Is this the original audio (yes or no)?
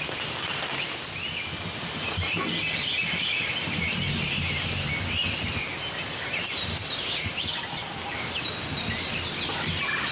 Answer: yes